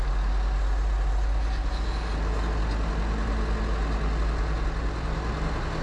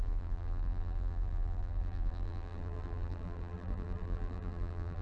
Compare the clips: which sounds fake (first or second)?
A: second